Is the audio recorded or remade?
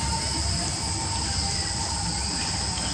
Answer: recorded